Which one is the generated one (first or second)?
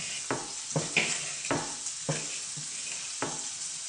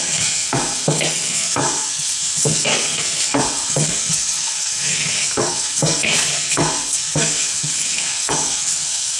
second